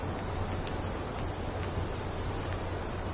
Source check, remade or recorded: recorded